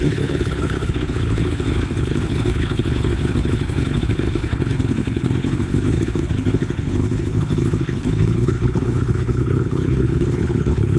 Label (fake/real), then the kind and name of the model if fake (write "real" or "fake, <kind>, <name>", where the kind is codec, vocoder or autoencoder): fake, codec, HILCodec